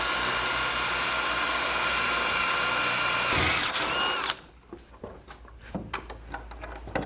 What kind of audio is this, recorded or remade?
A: recorded